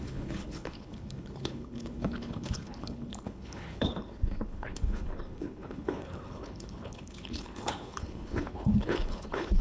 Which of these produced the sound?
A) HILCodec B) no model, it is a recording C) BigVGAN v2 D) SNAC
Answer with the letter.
A